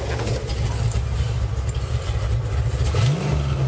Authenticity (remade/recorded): recorded